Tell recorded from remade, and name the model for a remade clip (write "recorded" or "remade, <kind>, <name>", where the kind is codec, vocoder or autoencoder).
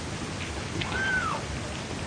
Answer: recorded